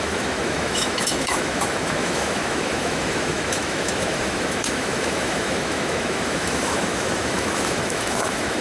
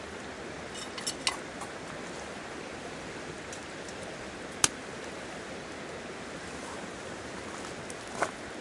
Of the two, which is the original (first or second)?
second